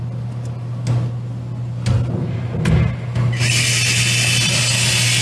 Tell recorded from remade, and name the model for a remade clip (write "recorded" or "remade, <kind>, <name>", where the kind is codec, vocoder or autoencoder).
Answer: recorded